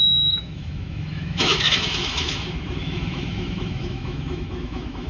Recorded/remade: remade